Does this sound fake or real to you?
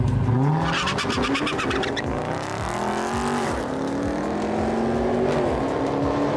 real